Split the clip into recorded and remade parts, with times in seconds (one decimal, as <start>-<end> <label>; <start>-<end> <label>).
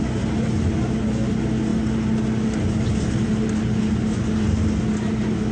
0.0-5.5 recorded